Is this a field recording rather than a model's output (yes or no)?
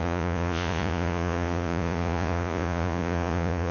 no